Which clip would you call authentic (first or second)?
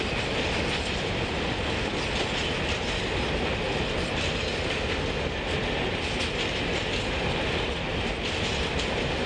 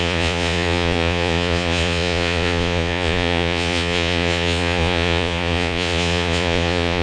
first